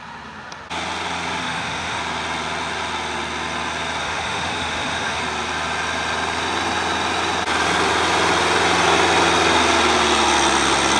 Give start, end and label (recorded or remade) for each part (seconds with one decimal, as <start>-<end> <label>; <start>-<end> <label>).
0.0-1.4 recorded; 1.4-2.0 remade; 2.0-4.0 recorded; 4.0-5.2 remade; 5.2-11.0 recorded